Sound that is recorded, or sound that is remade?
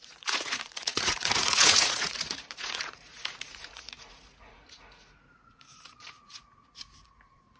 remade